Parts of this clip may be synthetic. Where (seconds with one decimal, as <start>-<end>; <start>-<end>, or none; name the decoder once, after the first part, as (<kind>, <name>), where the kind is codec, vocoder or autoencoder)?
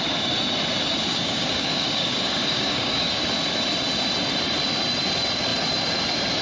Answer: 1.1-3.2 (codec, DAC)